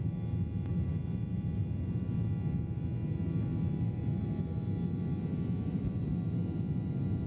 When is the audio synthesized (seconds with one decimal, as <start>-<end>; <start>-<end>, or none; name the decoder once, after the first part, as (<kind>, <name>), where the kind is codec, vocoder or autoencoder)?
none